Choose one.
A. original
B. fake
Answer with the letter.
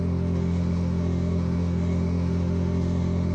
B